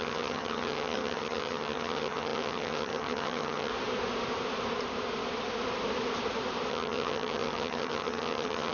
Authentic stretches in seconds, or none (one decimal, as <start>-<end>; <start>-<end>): 3.7-6.7

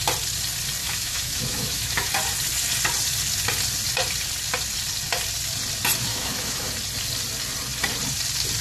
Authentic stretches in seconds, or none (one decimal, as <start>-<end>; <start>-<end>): 0.0-0.8; 2.1-6.1; 6.7-8.6

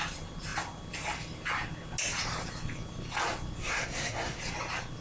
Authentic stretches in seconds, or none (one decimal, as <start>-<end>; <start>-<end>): 0.0-3.6; 4.4-5.0

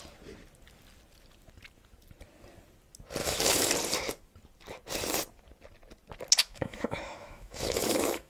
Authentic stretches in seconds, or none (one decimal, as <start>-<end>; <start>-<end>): 0.0-3.2; 3.7-6.4

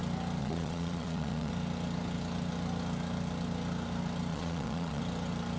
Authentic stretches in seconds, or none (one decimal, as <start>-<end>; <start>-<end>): 0.0-0.4; 1.5-4.3; 5.0-5.6

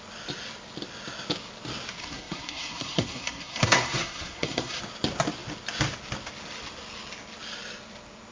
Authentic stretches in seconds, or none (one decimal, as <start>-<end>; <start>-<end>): 0.0-2.0; 4.8-8.3

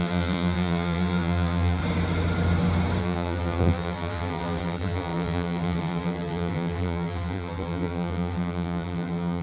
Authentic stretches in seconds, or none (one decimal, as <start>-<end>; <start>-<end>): 1.8-3.0

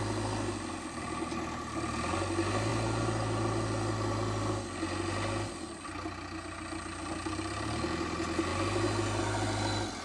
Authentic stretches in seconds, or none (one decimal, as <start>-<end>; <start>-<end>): 0.0-10.0